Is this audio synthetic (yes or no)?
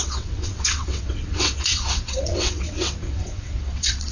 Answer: yes